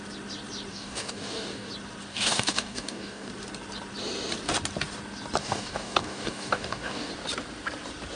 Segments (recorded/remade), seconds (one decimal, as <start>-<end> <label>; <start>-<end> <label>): 0.0-0.7 recorded; 0.7-1.7 remade; 1.7-2.1 recorded; 2.1-3.3 remade; 3.3-5.4 recorded; 5.4-7.1 remade; 7.1-8.2 recorded